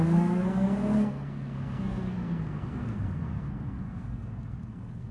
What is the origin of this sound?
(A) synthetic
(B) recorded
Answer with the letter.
A